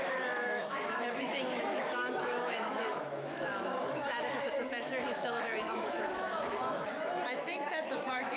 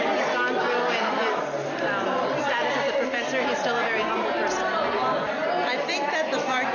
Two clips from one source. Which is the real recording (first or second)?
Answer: second